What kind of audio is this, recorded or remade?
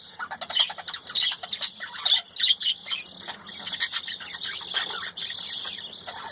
recorded